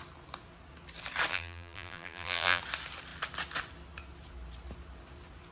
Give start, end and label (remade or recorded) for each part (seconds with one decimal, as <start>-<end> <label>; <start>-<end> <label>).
0.0-1.3 recorded; 1.3-2.6 remade; 2.6-5.5 recorded